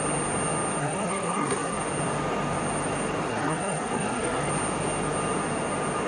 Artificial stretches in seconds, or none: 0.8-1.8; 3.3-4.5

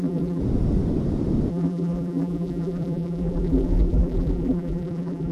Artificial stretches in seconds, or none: 0.0-0.4; 1.5-5.3

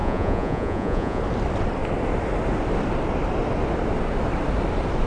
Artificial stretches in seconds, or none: 0.0-1.2

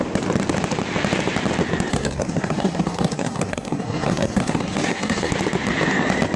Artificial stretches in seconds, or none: 1.9-5.3

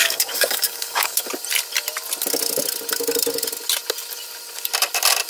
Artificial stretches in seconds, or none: 0.0-1.3

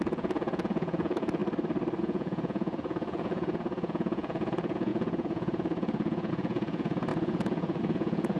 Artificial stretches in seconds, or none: 0.0-1.4; 2.0-8.4

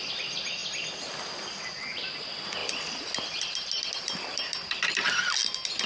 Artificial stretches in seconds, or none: 0.6-1.7; 2.6-5.1